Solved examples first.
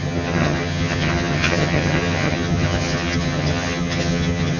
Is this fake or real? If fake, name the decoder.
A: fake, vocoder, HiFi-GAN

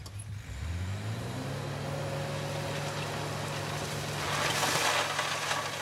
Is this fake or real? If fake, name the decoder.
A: real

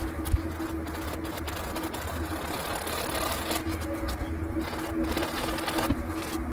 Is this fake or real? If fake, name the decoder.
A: real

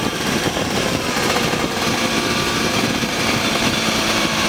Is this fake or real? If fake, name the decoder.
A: fake, vocoder, BigVGAN v2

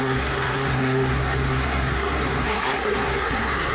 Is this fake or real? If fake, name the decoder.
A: fake, codec, SNAC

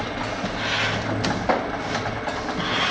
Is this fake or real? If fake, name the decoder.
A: real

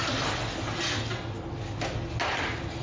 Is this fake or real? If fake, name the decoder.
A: real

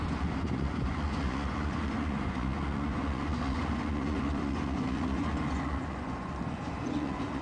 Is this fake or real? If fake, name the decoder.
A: fake, vocoder, Vocos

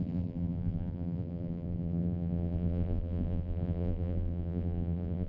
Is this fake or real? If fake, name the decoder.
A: fake, vocoder, BigVGAN v2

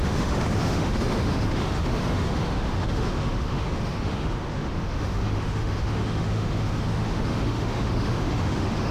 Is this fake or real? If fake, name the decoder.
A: fake, autoencoder, DAC-VAE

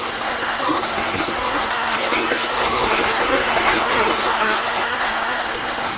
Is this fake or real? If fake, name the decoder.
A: fake, codec, SNAC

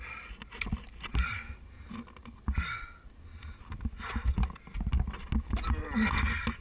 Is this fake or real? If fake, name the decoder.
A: real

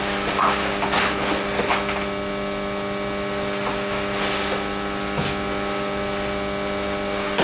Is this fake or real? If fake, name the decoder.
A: real